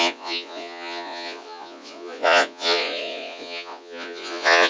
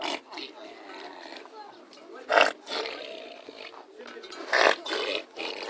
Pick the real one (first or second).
second